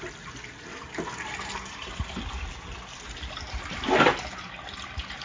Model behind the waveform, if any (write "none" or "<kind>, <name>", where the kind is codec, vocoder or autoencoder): none